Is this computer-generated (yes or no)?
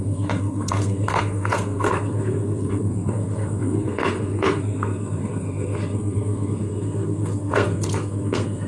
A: yes